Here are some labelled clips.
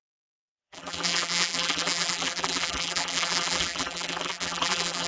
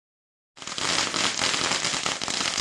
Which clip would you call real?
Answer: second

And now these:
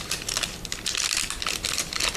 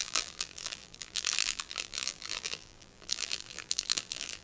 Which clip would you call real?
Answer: first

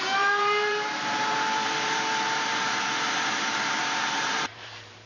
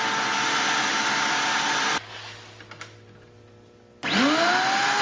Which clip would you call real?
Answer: second